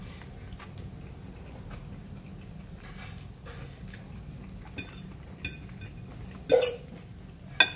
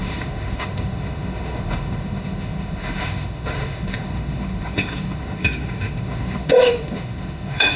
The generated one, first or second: second